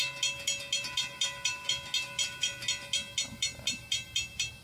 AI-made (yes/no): no